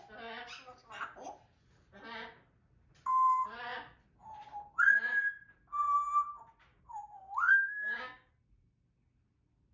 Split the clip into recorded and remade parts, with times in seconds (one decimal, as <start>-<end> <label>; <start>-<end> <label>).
0.0-6.7 recorded; 6.7-8.3 remade; 8.3-9.7 recorded